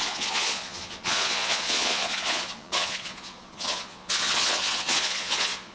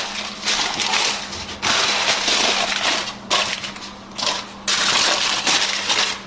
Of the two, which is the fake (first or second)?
first